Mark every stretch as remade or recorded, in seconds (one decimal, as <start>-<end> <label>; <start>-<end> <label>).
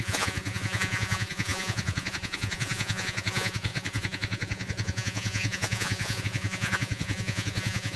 0.0-8.0 remade